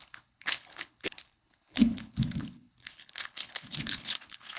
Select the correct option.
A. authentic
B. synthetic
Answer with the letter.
B